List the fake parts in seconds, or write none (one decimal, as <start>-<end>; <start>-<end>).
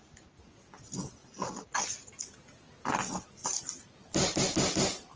3.4-5.2